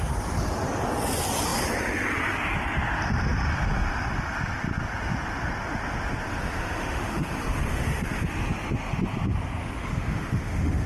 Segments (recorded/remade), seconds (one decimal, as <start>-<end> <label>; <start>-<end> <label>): 0.0-6.4 recorded; 6.4-7.3 remade; 7.3-7.7 recorded; 7.7-8.2 remade; 8.2-9.6 recorded; 9.6-10.9 remade

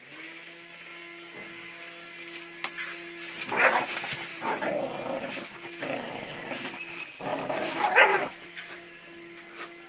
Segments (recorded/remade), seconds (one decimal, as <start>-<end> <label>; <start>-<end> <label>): 0.0-4.3 recorded; 4.3-4.8 remade; 4.8-7.3 recorded; 7.3-9.1 remade; 9.1-9.9 recorded

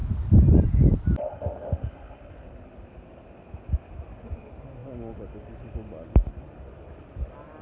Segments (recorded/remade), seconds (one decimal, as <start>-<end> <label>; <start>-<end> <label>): 0.0-4.3 remade; 4.3-7.6 recorded

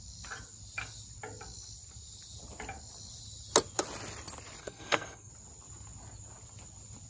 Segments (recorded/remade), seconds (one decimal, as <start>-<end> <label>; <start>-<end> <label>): 0.0-4.6 recorded; 4.6-5.3 remade; 5.3-7.1 recorded